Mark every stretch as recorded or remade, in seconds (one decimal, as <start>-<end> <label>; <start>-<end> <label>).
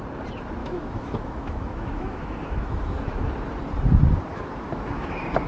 0.0-0.6 recorded; 0.6-3.3 remade; 3.3-4.3 recorded; 4.3-5.1 remade; 5.1-5.5 recorded